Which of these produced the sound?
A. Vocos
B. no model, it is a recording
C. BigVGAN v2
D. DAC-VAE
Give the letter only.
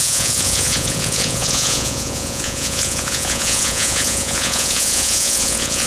A